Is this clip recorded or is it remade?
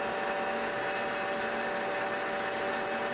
recorded